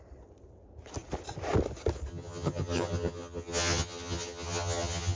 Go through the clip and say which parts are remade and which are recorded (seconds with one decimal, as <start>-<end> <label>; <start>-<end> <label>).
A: 0.0-2.1 recorded; 2.1-5.2 remade